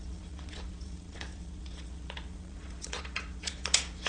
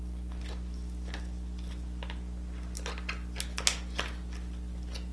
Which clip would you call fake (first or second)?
first